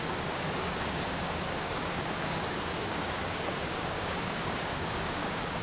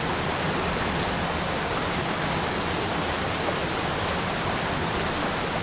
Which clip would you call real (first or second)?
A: second